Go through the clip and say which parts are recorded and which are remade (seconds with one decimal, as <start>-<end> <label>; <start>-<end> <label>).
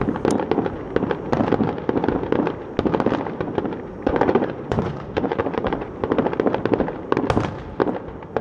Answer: 0.0-3.9 recorded; 3.9-5.9 remade; 5.9-8.4 recorded